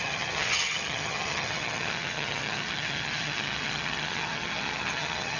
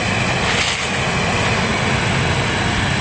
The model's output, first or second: first